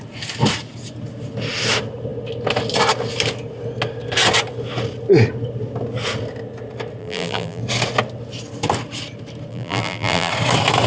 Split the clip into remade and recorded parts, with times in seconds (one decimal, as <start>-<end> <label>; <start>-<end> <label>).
0.0-7.0 recorded; 7.0-7.6 remade; 7.6-9.5 recorded; 9.5-10.3 remade; 10.3-10.9 recorded